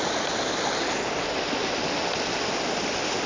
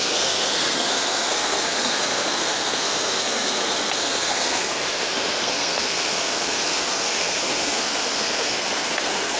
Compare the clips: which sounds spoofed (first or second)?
second